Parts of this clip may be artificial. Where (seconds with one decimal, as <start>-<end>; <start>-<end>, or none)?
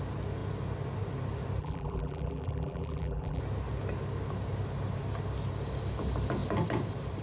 1.6-3.4